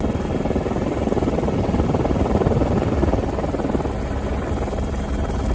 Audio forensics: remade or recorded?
recorded